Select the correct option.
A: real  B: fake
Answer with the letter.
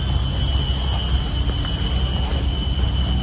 A